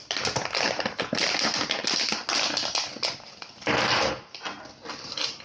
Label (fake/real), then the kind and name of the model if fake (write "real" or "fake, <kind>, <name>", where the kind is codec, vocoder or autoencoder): real